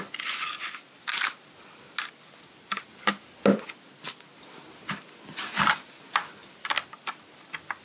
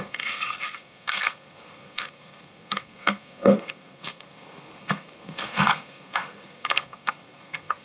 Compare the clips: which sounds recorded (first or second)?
first